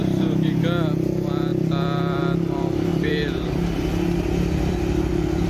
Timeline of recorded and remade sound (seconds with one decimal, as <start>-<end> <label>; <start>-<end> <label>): 0.0-0.6 remade; 0.6-2.9 recorded; 2.9-5.1 remade; 5.1-5.5 recorded